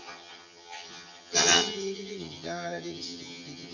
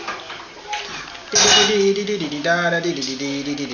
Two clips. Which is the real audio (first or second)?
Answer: second